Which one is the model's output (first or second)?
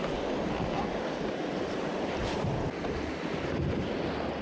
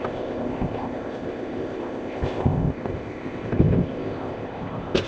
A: second